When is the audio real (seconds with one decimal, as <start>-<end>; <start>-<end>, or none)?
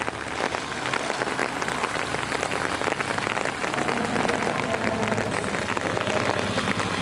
0.0-7.0